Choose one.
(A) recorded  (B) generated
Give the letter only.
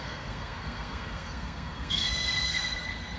B